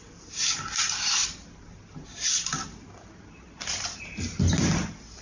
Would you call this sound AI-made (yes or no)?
no